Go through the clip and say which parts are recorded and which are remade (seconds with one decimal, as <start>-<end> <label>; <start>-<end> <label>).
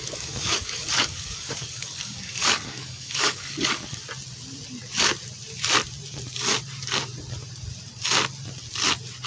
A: 0.0-4.0 remade; 4.0-9.3 recorded